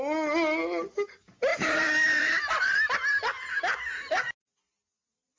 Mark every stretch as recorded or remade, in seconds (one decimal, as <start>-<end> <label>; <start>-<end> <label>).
0.0-1.5 recorded; 1.5-3.1 remade; 3.1-5.4 recorded